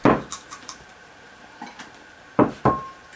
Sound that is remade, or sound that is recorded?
remade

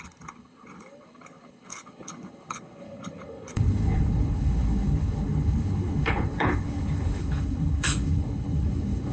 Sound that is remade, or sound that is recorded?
remade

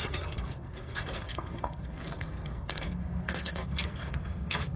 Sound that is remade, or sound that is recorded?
remade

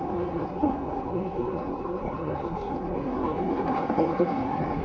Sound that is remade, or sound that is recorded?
remade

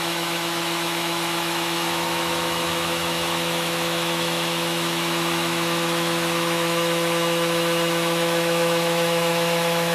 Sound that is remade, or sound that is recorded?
remade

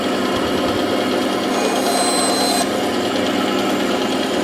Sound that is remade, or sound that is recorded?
recorded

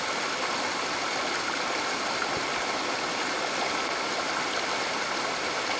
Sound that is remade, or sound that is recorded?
remade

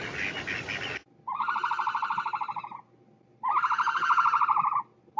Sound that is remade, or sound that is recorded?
recorded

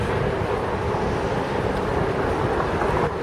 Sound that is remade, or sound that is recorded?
recorded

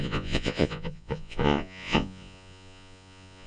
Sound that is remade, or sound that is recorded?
remade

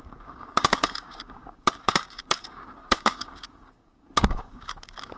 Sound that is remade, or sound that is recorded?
remade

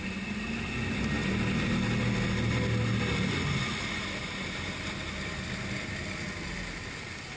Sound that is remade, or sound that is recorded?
recorded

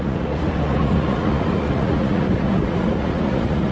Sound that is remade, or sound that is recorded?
remade